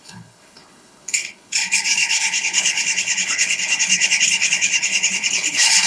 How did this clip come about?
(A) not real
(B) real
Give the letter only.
A